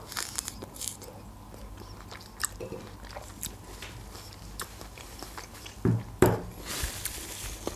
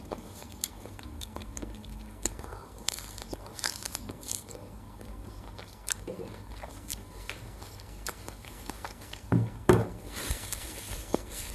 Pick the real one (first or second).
first